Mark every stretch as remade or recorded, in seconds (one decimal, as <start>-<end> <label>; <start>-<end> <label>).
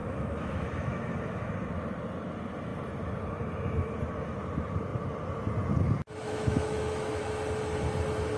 0.0-1.5 remade; 1.5-6.2 recorded; 6.2-7.2 remade; 7.2-8.4 recorded